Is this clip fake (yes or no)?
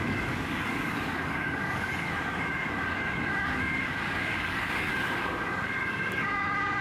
yes